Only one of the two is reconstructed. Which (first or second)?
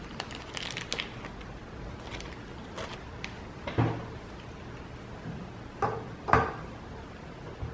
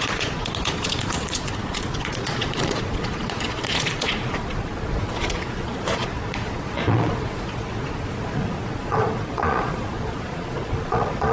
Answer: second